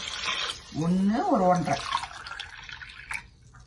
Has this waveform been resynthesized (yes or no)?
no